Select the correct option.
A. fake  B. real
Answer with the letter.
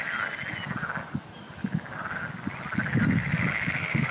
B